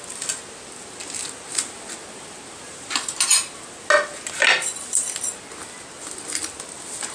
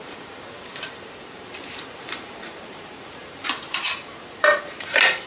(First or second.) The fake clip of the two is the second